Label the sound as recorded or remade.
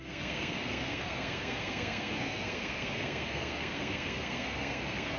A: remade